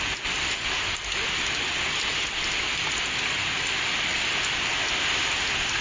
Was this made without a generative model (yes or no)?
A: yes